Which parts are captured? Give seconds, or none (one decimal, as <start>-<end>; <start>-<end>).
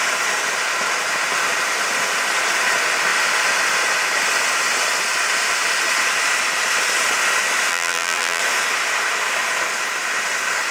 0.0-7.7; 8.4-10.7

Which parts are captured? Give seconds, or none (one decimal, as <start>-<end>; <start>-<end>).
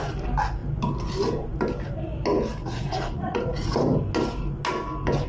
0.0-2.6; 3.7-5.3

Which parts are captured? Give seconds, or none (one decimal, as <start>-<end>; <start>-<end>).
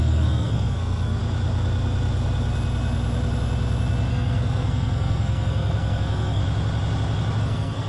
1.2-4.1; 6.4-7.4